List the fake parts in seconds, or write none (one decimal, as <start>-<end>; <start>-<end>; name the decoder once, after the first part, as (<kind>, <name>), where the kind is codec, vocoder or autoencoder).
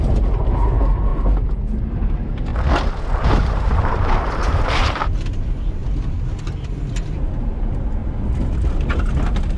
0.0-2.5 (vocoder, BigVGAN v2); 3.2-5.8; 6.4-8.0